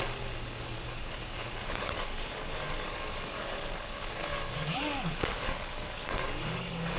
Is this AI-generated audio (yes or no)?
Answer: yes